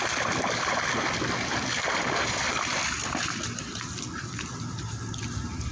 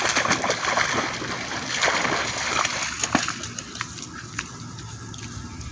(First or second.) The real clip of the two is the second